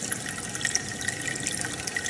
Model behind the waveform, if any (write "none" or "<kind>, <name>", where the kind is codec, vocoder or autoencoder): none